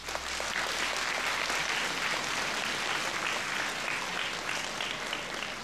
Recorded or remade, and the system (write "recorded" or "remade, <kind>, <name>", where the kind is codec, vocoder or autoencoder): recorded